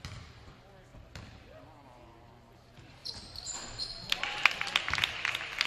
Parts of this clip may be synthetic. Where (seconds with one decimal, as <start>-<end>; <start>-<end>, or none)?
0.9-1.6; 3.0-4.8